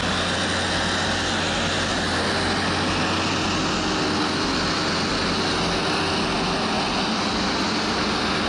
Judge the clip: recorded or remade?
recorded